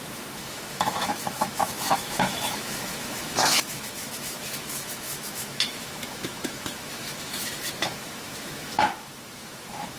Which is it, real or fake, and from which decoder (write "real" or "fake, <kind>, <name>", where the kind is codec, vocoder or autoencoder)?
fake, autoencoder, DAC-VAE